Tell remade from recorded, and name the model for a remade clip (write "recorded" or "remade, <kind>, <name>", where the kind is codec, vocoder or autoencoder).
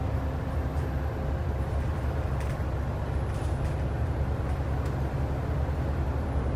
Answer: recorded